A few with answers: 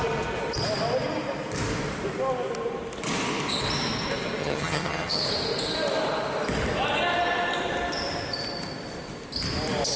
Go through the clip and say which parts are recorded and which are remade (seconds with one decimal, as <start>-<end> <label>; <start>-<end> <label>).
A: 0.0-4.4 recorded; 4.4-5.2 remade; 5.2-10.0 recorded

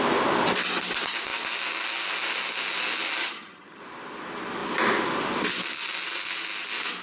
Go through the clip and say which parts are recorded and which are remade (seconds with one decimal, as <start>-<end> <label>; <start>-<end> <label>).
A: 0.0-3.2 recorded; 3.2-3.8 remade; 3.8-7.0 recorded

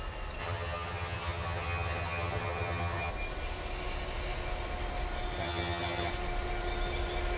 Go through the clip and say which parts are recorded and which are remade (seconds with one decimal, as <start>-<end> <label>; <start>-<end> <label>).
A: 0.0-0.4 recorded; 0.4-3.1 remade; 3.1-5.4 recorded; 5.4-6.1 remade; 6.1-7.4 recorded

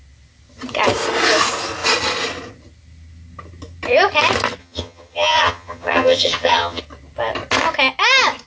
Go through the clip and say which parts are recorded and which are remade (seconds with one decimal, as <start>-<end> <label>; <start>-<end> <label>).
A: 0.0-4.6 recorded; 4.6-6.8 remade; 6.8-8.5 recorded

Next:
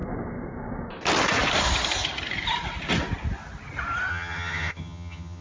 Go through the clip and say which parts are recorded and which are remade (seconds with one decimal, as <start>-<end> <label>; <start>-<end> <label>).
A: 0.0-4.1 recorded; 4.1-5.4 remade

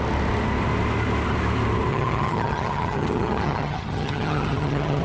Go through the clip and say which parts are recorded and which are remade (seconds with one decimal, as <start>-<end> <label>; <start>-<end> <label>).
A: 0.0-1.9 recorded; 1.9-5.0 remade

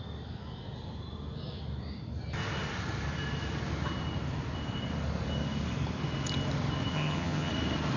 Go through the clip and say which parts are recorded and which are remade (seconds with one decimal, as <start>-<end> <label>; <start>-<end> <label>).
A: 0.0-6.9 recorded; 6.9-7.5 remade; 7.5-8.0 recorded

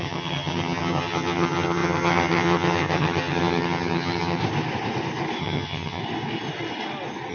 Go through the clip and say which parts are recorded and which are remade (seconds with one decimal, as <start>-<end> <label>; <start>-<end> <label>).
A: 0.0-4.4 remade; 4.4-5.4 recorded; 5.4-6.0 remade; 6.0-7.3 recorded